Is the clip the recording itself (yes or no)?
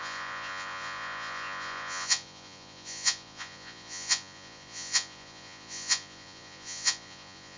no